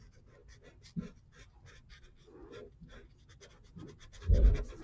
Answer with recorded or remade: recorded